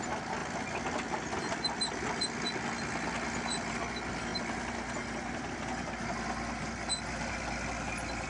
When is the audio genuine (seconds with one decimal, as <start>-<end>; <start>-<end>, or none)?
0.0-8.3